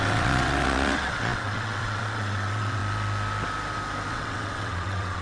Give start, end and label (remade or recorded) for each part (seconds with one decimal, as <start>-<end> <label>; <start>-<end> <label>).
0.0-2.8 remade; 2.8-4.1 recorded; 4.1-5.2 remade